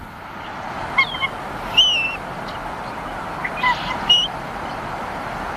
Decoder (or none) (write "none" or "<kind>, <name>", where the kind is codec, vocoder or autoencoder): none